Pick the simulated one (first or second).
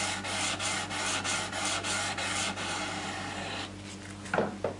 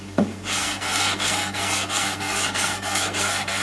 second